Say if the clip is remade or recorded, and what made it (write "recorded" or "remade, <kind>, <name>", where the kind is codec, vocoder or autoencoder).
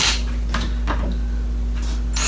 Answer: recorded